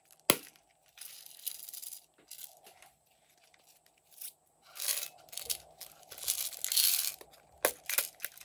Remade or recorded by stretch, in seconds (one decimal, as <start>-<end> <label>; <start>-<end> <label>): 0.0-8.4 recorded